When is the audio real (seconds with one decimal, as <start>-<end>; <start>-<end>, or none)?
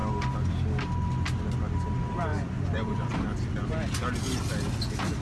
0.0-2.3; 3.1-5.2